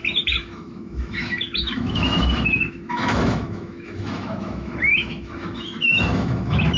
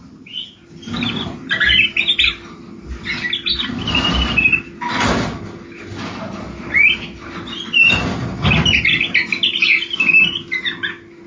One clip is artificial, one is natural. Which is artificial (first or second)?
first